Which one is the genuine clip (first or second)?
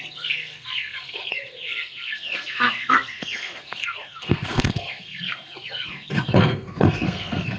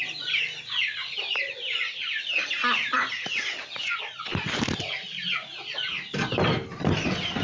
second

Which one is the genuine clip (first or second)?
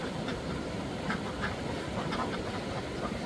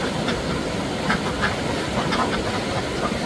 second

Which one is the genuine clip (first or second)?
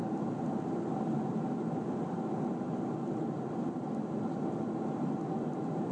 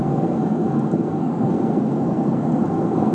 first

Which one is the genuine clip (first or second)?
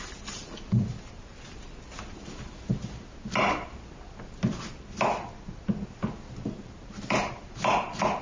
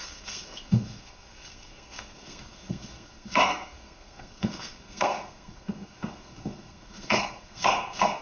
first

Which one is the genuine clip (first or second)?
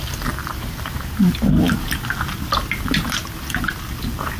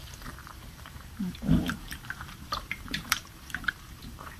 first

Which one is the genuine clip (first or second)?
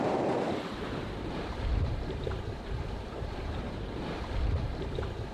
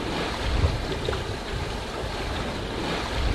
second